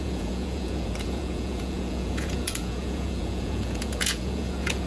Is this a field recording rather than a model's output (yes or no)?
no